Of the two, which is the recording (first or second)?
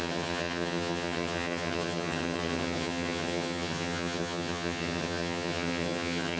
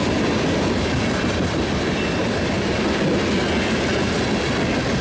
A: second